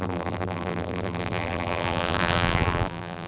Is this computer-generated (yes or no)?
yes